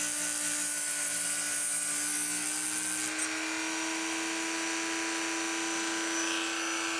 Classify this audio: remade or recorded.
recorded